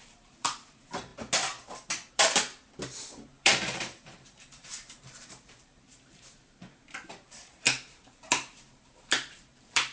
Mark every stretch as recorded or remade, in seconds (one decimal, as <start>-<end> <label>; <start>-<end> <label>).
0.0-1.1 remade; 1.1-2.1 recorded; 2.1-2.5 remade; 2.5-3.0 recorded; 3.0-9.9 remade